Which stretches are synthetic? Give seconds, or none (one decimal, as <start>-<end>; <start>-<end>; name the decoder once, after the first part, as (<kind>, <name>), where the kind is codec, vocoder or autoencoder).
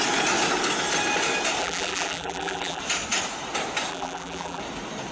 1.6-2.8 (vocoder, BigVGAN v2); 3.9-4.6